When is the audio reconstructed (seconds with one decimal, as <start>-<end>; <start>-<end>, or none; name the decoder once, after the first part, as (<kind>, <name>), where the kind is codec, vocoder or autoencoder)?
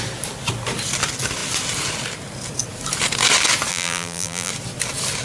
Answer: 3.7-4.5 (vocoder, BigVGAN v2)